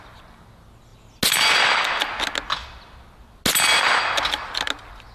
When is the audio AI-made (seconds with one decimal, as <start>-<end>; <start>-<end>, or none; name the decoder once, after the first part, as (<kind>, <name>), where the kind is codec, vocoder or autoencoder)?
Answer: none